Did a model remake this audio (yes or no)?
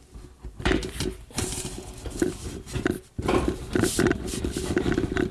yes